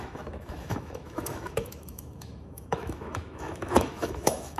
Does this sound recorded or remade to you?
remade